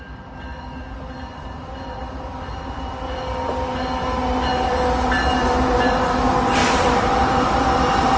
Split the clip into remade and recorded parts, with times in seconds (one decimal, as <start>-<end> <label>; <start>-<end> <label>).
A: 0.0-6.6 recorded; 6.6-7.1 remade; 7.1-8.2 recorded